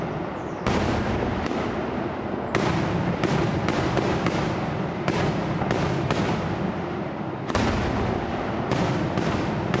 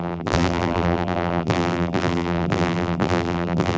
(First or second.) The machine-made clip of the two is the second